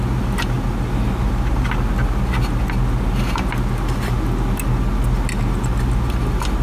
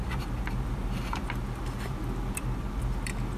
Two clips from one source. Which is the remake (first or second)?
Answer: second